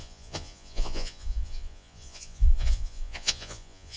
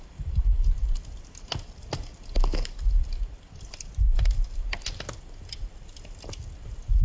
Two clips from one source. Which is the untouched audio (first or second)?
second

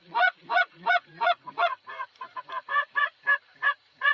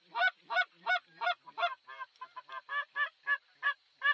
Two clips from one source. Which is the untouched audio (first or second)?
second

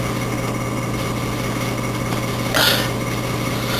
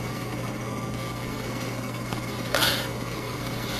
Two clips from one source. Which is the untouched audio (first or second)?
first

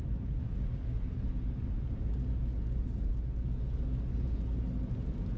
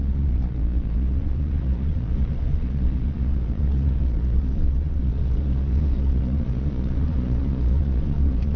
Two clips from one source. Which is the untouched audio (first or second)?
first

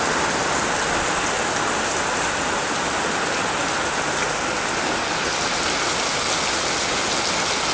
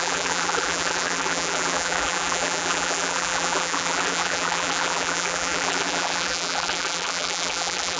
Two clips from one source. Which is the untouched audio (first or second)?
first